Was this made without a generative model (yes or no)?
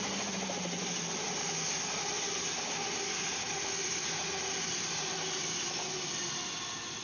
yes